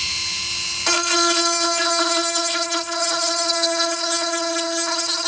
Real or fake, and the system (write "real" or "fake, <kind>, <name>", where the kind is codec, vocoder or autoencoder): real